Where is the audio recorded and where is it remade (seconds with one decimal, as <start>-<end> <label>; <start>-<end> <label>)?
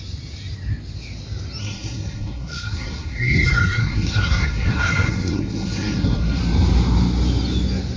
0.0-1.6 recorded; 1.6-6.4 remade; 6.4-8.0 recorded